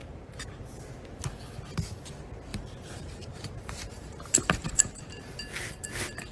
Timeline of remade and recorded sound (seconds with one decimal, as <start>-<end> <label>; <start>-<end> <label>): 0.0-0.6 remade; 0.6-2.5 recorded; 2.5-5.2 remade; 5.2-6.3 recorded